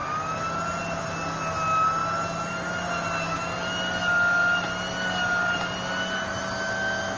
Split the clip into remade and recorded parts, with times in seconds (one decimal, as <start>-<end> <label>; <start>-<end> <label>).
0.0-7.2 recorded